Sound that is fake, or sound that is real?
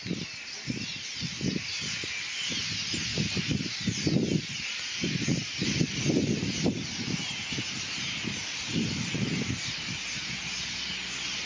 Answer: real